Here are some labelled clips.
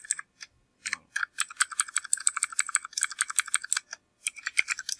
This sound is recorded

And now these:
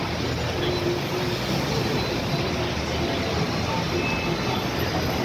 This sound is recorded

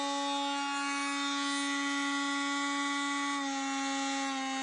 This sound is recorded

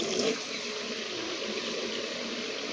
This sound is recorded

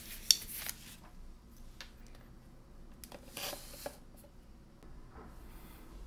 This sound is recorded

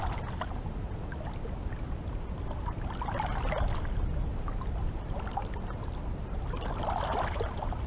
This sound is recorded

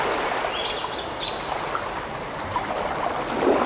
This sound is recorded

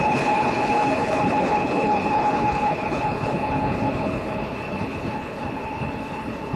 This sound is remade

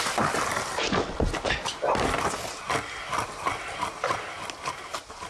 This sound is recorded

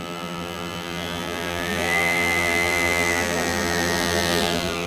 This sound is remade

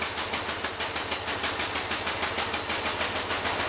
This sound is recorded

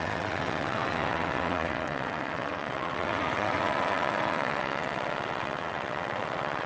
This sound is remade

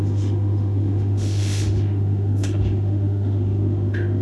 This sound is remade